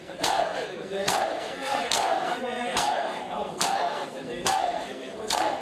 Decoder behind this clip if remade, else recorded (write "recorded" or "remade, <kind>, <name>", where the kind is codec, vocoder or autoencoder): remade, codec, SNAC